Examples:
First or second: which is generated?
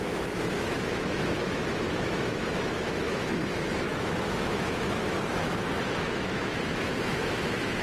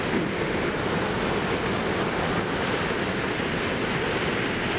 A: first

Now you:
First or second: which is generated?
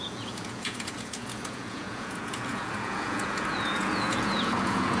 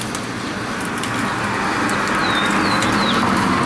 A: first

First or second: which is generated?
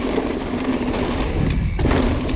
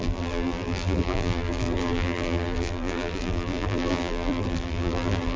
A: second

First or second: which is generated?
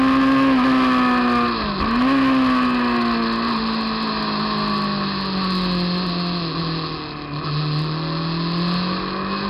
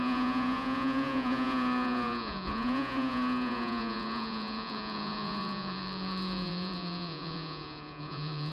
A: second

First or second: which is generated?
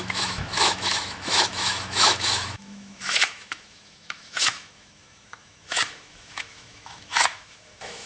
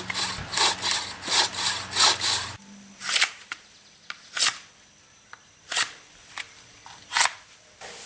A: first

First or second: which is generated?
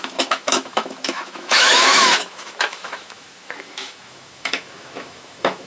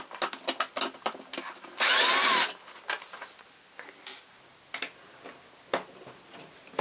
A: first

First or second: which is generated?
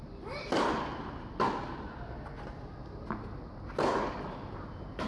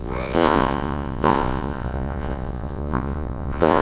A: second